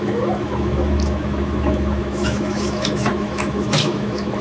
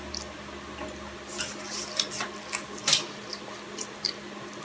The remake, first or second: first